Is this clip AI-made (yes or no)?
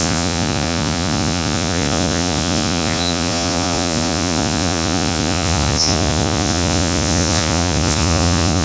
yes